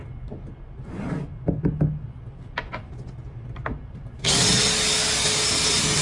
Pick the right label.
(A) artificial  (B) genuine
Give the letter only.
B